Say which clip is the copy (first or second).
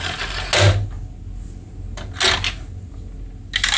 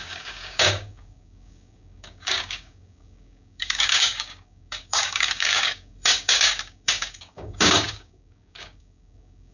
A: second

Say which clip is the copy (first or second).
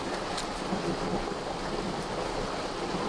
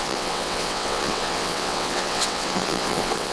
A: second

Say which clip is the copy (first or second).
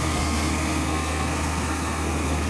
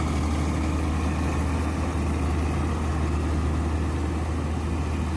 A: first